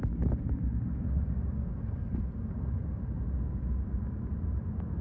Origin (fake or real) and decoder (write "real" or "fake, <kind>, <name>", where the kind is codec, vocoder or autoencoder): real